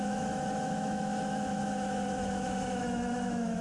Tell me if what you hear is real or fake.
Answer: fake